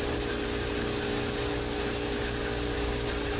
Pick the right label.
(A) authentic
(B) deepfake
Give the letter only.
A